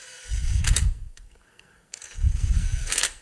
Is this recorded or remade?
remade